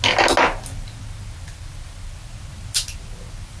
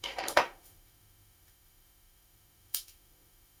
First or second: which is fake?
second